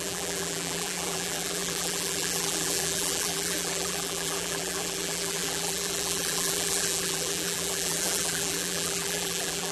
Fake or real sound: fake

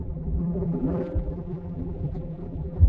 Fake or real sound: fake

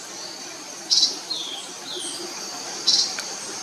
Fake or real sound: fake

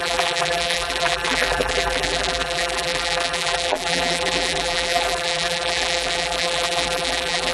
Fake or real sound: fake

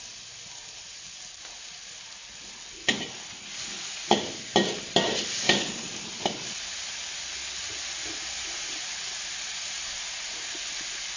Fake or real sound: real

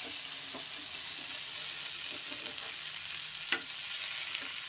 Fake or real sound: real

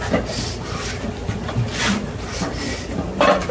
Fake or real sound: real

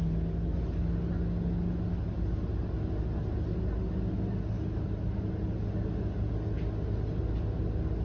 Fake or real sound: real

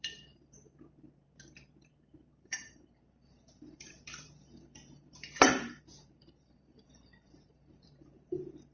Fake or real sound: fake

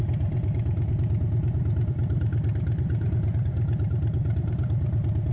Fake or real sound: fake